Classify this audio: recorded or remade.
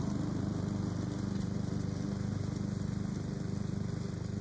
recorded